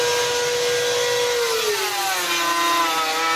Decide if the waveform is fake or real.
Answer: real